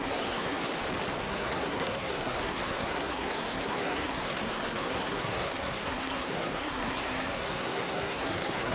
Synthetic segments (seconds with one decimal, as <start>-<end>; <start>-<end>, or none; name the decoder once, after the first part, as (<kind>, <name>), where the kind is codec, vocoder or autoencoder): 0.0-0.7 (codec, SNAC); 1.2-8.7